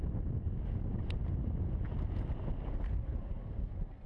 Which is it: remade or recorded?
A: recorded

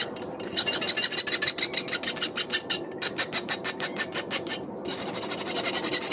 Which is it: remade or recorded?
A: remade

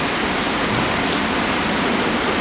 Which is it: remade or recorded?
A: remade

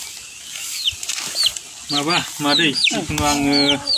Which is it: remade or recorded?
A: recorded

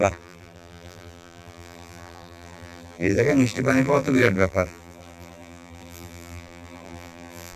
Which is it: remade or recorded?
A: remade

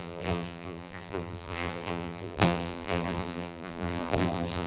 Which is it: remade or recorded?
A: remade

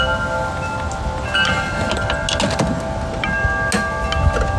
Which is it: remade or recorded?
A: recorded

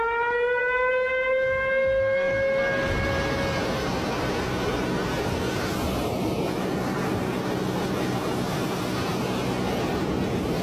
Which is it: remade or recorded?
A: recorded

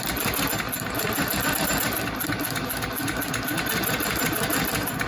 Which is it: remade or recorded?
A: recorded